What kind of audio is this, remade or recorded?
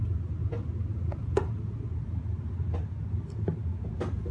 recorded